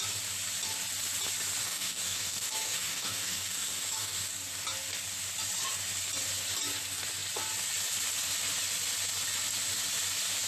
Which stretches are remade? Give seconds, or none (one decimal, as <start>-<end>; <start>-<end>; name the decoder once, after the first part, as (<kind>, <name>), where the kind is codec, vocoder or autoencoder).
1.6-4.3 (codec, DAC)